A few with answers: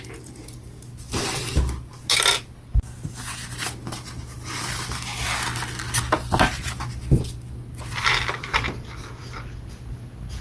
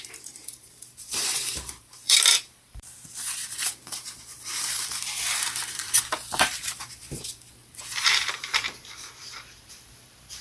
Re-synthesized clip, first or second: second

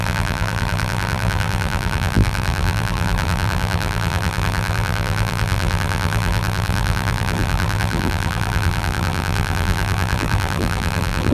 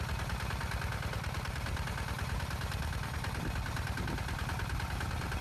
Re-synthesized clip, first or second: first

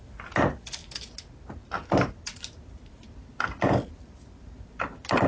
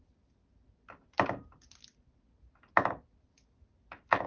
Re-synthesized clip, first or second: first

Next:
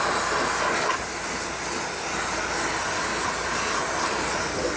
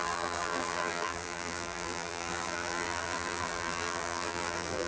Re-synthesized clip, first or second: second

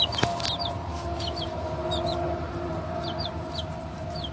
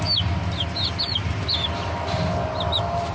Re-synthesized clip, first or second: first